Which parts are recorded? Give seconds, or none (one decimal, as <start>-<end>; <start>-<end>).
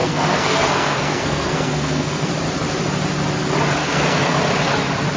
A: 2.3-3.8; 4.4-5.2